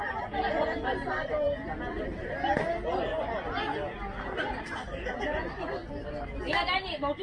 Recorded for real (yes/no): yes